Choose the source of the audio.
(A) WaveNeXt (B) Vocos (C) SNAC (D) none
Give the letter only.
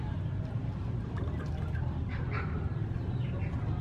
D